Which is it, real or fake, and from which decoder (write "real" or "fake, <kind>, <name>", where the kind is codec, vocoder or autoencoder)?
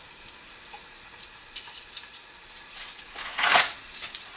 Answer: fake, vocoder, Vocos